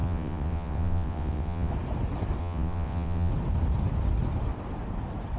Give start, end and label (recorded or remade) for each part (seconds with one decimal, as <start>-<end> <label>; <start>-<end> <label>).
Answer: 0.0-1.7 remade; 1.7-2.4 recorded; 2.4-3.3 remade; 3.3-5.4 recorded